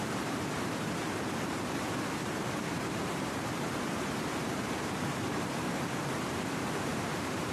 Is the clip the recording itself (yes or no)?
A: no